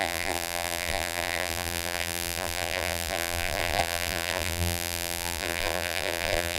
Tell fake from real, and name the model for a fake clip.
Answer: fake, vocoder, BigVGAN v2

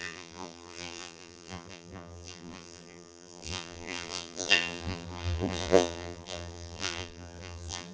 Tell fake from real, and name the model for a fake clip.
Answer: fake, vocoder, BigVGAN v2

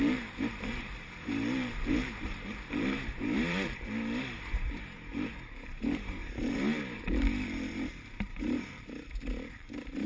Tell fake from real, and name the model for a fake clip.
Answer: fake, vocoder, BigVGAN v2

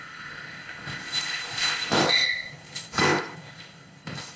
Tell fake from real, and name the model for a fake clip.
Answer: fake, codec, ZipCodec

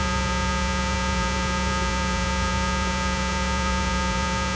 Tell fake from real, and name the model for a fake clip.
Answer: fake, vocoder, Vocos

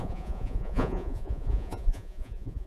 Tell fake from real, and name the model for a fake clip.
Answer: fake, vocoder, Vocos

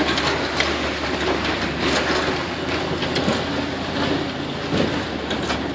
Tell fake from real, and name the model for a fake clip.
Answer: real